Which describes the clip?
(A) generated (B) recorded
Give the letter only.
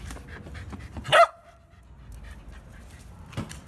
B